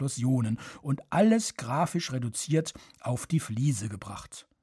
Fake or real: real